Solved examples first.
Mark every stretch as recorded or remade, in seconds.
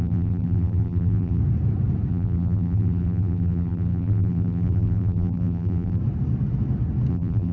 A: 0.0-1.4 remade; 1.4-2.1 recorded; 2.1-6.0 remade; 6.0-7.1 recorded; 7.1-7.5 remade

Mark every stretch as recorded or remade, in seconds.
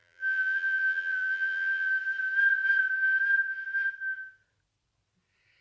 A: 0.0-1.9 remade; 1.9-5.6 recorded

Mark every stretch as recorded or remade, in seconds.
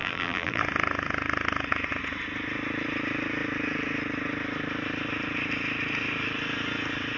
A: 0.0-0.6 remade; 0.6-7.2 recorded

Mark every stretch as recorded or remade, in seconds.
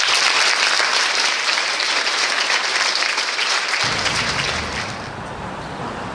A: 0.0-0.9 recorded; 0.9-4.6 remade; 4.6-6.1 recorded